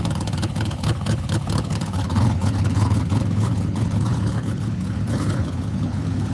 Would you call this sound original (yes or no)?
no